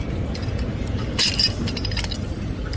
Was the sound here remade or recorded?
recorded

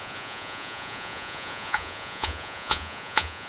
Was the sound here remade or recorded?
remade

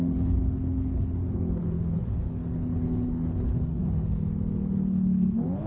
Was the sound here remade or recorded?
remade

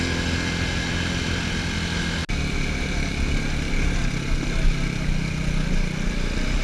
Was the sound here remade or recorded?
recorded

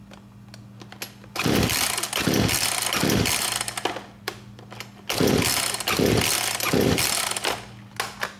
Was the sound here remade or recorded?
recorded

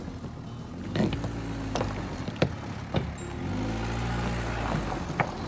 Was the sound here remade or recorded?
recorded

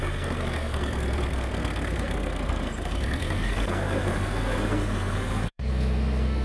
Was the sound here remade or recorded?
remade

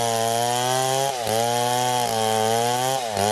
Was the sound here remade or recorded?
recorded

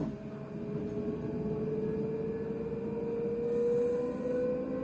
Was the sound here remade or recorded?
recorded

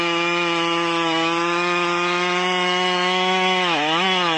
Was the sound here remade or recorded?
remade